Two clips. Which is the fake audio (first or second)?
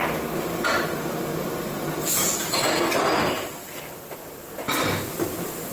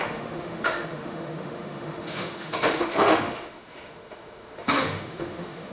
second